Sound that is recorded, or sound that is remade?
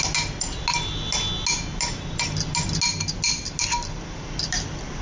recorded